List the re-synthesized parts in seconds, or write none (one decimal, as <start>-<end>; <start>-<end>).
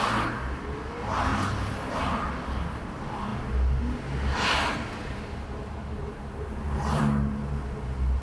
none